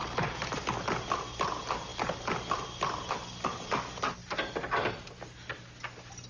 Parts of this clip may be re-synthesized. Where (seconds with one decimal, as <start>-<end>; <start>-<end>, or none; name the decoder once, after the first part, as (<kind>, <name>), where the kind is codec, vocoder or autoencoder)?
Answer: none